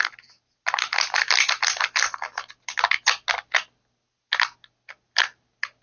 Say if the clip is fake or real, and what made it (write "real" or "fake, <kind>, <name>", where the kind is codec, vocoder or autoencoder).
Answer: real